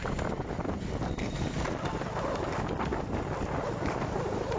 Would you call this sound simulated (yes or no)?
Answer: no